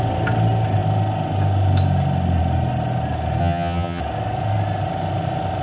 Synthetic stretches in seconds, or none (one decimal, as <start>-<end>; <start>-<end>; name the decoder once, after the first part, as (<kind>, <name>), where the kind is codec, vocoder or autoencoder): 3.4-4.0 (vocoder, HiFi-GAN)